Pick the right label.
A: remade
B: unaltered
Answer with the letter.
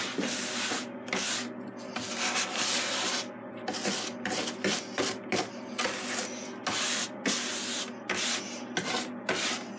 B